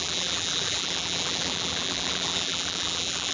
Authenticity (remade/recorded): remade